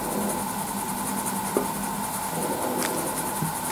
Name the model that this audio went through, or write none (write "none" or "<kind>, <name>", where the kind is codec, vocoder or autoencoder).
none